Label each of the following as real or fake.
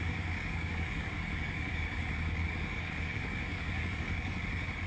fake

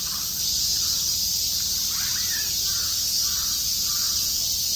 fake